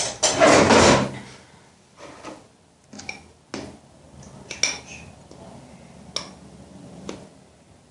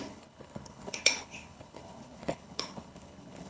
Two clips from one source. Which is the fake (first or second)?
second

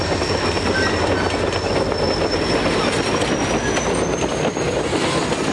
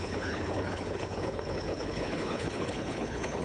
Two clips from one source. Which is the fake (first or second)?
second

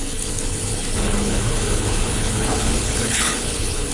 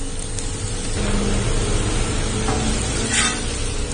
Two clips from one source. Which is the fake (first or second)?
first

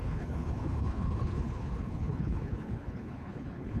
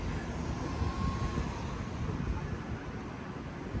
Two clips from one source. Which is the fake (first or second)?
first